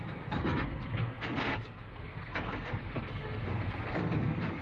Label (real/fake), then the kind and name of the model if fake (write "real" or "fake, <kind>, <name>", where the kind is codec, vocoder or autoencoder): fake, codec, SNAC